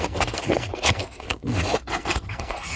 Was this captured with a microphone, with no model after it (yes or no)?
no